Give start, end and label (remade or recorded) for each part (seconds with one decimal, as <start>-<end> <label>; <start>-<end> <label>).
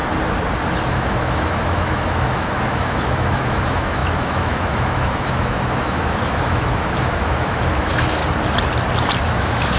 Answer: 0.0-0.8 recorded; 0.8-8.2 remade; 8.2-9.2 recorded; 9.2-9.8 remade